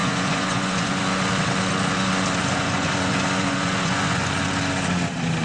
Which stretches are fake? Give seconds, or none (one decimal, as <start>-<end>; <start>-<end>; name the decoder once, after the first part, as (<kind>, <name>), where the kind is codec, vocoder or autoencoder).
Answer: 0.0-1.0 (vocoder, Vocos); 2.4-4.3